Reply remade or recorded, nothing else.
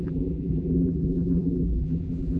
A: remade